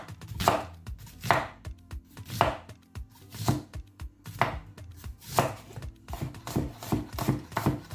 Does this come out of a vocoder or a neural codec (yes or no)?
no